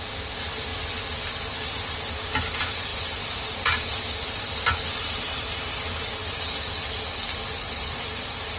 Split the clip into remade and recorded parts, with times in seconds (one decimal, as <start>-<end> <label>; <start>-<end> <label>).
0.0-8.6 recorded